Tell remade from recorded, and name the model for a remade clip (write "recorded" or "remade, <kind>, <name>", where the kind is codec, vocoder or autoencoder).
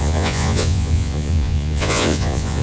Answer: remade, vocoder, Vocos